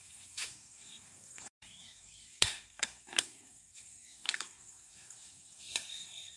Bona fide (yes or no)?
no